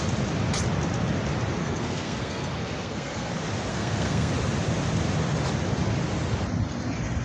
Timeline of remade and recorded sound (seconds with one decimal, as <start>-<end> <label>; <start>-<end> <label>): 0.0-1.6 recorded; 1.6-3.3 remade; 3.3-3.7 recorded; 3.7-4.3 remade; 4.3-7.2 recorded

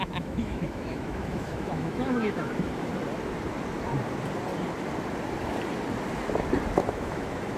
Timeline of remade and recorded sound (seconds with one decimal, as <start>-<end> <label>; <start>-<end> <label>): 0.0-2.9 remade; 2.9-6.9 recorded; 6.9-7.6 remade